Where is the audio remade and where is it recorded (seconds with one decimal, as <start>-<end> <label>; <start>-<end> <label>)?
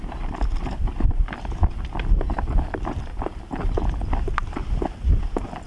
0.0-5.7 recorded